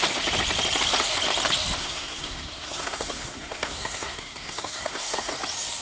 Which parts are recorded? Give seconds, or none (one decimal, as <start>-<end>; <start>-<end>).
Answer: 0.0-1.8; 5.3-5.8